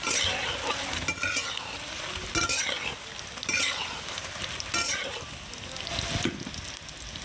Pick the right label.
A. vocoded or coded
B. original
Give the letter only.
B